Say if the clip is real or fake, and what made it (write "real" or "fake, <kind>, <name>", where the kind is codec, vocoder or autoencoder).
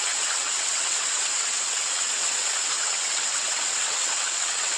fake, vocoder, WaveNeXt